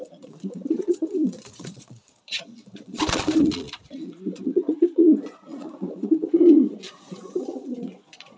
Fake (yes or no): yes